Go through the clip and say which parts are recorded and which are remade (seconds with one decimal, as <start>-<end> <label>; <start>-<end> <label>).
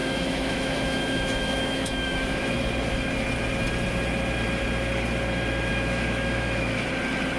0.0-2.6 remade; 2.6-5.7 recorded; 5.7-6.9 remade; 6.9-7.4 recorded